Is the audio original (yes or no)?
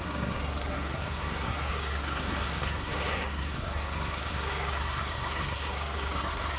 no